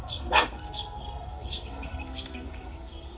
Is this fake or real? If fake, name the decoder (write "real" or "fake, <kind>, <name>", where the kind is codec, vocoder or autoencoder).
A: fake, codec, SNAC